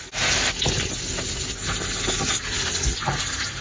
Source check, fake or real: real